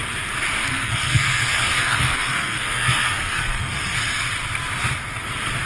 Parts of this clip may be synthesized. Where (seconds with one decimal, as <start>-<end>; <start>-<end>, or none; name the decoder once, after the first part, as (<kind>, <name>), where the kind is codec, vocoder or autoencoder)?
0.6-4.0 (codec, SNAC)